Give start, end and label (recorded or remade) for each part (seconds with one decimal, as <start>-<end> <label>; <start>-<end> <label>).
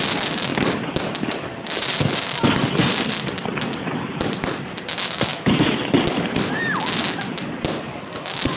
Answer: 0.0-5.3 recorded; 5.3-5.8 remade; 5.8-8.6 recorded